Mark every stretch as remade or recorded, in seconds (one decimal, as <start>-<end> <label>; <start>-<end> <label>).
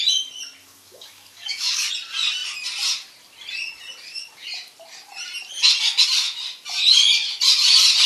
0.0-0.6 recorded; 0.6-1.9 remade; 1.9-8.1 recorded